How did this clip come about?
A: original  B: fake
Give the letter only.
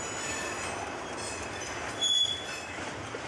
A